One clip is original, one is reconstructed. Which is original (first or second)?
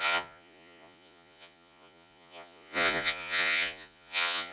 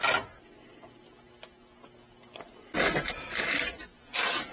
second